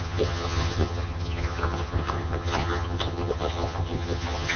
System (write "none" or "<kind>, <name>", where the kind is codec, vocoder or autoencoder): vocoder, HiFi-GAN